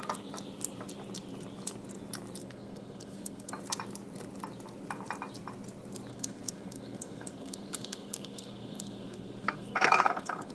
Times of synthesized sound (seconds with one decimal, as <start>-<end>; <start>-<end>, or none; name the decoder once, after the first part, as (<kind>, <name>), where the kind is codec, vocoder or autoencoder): 2.4-3.5 (codec, SNAC); 6.1-10.5